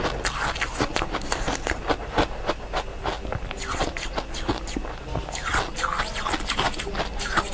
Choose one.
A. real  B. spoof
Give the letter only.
A